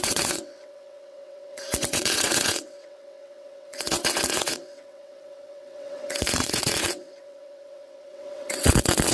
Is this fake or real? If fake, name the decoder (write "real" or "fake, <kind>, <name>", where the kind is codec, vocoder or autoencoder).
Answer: fake, vocoder, WaveNeXt